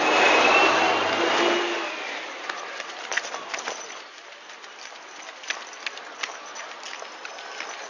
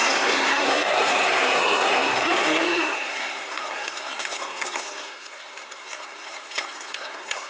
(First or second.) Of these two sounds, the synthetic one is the second